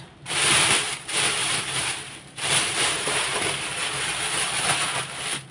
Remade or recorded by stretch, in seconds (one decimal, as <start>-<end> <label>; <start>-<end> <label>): 0.0-1.4 recorded; 1.4-3.5 remade; 3.5-5.5 recorded